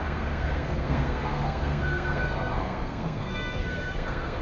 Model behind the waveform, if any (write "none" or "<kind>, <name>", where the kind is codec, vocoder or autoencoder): codec, SNAC